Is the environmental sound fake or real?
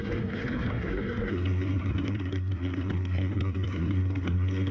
fake